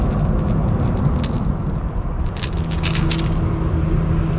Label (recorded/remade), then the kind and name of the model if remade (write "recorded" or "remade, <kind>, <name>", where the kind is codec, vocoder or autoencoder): recorded